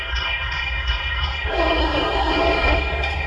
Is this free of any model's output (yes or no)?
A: no